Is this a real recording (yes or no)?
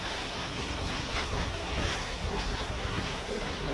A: no